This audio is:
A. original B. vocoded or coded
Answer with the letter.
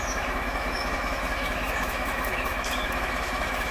B